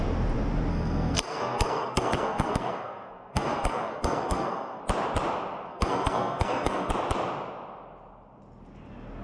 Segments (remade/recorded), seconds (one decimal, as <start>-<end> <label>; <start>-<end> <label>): 0.0-0.7 recorded; 0.7-4.8 remade; 4.8-5.7 recorded; 5.7-6.9 remade; 6.9-9.2 recorded